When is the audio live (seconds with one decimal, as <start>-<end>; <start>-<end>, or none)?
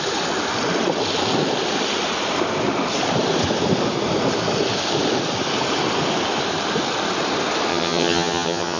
0.0-7.7